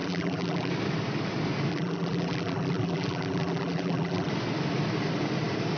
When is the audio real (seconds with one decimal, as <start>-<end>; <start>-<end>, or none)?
0.7-1.7; 4.3-5.8